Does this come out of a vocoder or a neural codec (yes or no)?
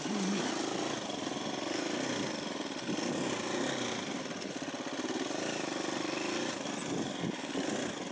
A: no